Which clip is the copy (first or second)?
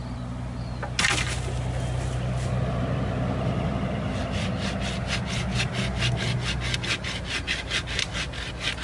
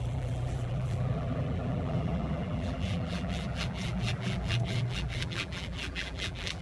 second